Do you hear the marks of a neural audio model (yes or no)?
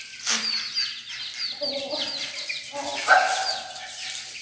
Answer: no